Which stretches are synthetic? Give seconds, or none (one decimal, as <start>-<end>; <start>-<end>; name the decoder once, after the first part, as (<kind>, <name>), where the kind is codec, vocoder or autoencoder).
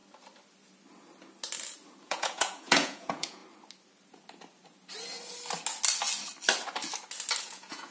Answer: 2.0-3.4 (vocoder, Vocos); 7.4-7.9